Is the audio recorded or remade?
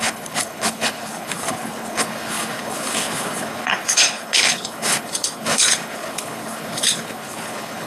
remade